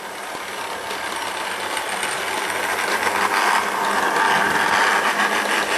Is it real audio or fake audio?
real